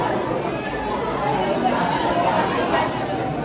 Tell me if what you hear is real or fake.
real